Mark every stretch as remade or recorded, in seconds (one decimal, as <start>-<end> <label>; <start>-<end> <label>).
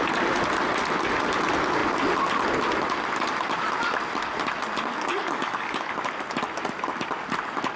0.0-5.1 recorded; 5.1-5.9 remade; 5.9-7.8 recorded